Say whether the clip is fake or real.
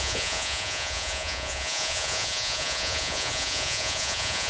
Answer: fake